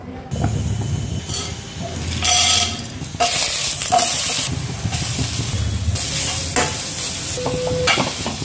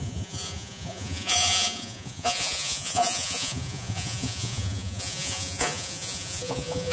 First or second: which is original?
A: first